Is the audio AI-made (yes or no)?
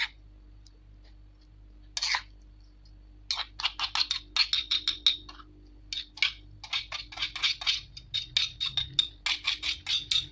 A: no